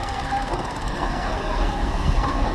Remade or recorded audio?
remade